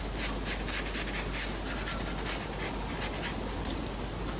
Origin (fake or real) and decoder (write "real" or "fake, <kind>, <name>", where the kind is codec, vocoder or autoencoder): real